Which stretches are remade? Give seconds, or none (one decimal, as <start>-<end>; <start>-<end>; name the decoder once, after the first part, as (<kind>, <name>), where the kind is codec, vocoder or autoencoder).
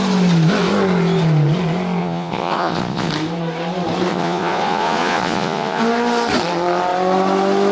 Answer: 2.0-3.1 (vocoder, Vocos); 4.1-5.8